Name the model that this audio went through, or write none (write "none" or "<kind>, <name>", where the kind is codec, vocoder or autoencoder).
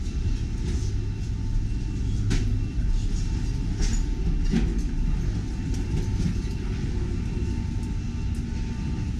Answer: none